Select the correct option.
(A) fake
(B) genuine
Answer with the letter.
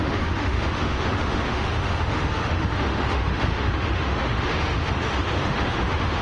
A